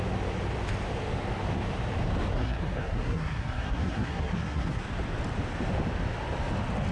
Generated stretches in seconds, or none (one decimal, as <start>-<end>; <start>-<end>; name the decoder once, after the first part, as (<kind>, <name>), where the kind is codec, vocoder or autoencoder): 2.3-4.8 (codec, SNAC)